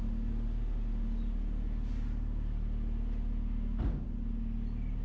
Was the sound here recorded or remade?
recorded